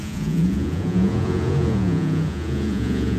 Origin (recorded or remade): remade